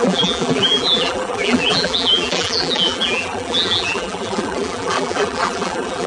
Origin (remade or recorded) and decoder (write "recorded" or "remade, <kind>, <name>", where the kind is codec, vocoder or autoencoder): remade, vocoder, BigVGAN v2